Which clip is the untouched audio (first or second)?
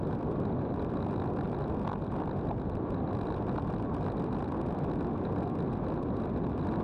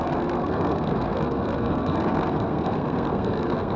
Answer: first